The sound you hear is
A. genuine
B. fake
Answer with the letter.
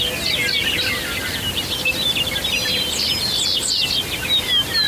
A